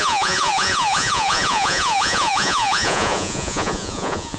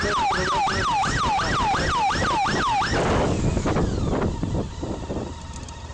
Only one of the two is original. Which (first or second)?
second